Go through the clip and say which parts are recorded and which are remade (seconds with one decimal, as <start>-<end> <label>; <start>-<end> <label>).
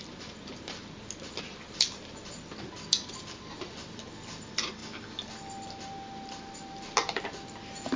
0.0-8.0 recorded